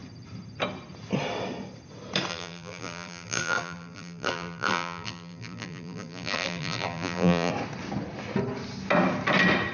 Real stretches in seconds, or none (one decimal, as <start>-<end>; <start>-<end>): 0.0-2.3; 7.5-9.7